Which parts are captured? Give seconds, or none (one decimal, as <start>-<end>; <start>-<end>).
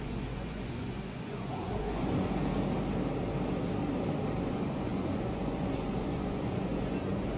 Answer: 2.4-4.5